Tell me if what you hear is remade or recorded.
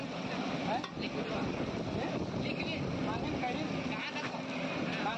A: recorded